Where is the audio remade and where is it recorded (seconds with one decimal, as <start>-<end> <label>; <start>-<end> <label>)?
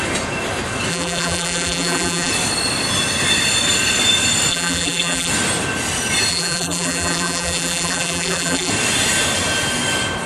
0.0-0.9 recorded; 0.9-2.3 remade; 2.3-4.5 recorded; 4.5-5.3 remade; 5.3-6.3 recorded; 6.3-8.7 remade; 8.7-10.3 recorded